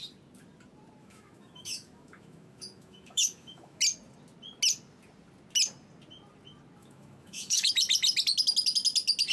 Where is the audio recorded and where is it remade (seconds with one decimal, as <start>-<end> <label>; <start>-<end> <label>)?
0.0-1.0 recorded; 1.0-3.8 remade; 3.8-6.8 recorded; 6.8-7.7 remade; 7.7-9.3 recorded